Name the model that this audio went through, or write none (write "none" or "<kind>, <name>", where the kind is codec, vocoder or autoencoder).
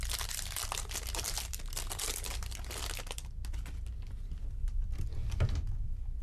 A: none